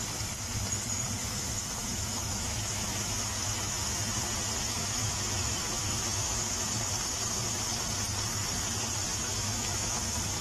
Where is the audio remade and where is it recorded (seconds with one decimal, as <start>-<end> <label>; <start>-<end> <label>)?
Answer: 0.0-1.2 recorded; 1.2-3.7 remade; 3.7-4.8 recorded; 4.8-6.6 remade; 6.6-9.3 recorded; 9.3-10.4 remade